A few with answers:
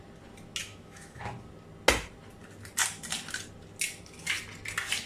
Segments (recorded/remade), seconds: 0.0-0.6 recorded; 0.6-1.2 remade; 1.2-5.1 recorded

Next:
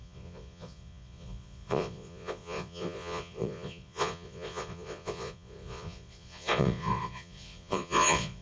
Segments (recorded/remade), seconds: 0.0-8.4 remade

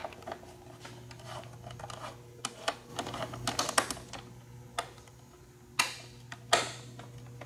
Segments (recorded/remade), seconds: 0.0-7.5 recorded

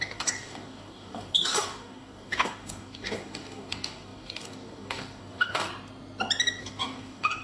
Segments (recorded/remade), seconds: 0.0-5.7 remade; 5.7-6.6 recorded; 6.6-7.4 remade

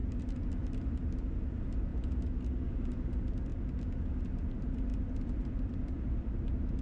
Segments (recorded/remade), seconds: 0.0-1.9 remade; 1.9-2.7 recorded; 2.7-3.5 remade; 3.5-4.2 recorded; 4.2-6.8 remade

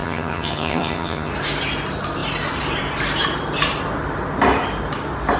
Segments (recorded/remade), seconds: 0.0-1.3 remade; 1.3-5.4 recorded

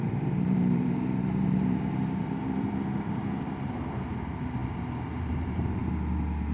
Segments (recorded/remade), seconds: 0.0-3.2 remade; 3.2-3.7 recorded; 3.7-4.6 remade; 4.6-5.3 recorded; 5.3-5.8 remade; 5.8-6.5 recorded

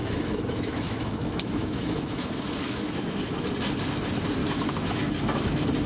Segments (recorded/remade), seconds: 0.0-3.5 remade; 3.5-4.4 recorded; 4.4-5.1 remade; 5.1-5.9 recorded